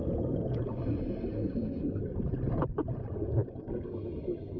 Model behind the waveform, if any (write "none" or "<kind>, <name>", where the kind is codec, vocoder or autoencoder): none